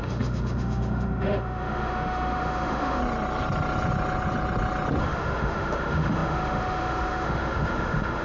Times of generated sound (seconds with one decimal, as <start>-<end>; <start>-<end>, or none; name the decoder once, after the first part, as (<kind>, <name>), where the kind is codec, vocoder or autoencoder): 0.0-3.0 (autoencoder, DAC-VAE); 5.0-8.2